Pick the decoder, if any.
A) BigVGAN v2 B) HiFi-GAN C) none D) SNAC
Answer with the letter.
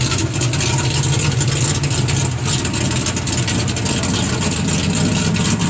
C